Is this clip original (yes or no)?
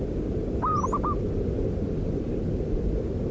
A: yes